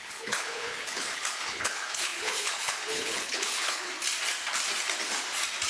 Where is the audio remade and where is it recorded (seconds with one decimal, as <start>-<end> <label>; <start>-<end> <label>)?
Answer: 0.0-3.9 remade; 3.9-5.7 recorded